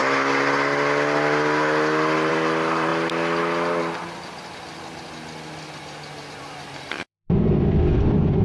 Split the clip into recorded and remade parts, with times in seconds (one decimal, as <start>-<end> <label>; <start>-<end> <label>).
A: 0.0-2.3 recorded; 2.3-2.9 remade; 2.9-6.3 recorded; 6.3-8.4 remade